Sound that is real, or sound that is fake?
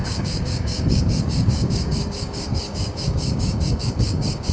fake